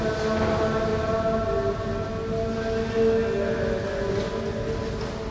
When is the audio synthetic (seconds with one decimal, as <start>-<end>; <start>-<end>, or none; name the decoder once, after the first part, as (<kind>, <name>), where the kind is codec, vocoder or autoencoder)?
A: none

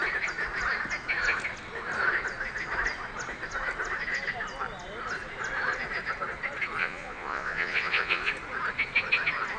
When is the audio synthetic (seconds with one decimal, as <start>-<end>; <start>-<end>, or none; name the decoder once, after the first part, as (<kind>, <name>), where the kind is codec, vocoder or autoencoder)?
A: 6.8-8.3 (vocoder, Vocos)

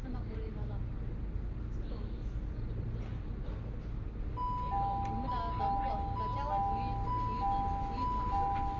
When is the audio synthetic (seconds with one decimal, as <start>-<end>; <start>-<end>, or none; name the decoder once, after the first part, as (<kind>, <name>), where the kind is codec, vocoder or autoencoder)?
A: none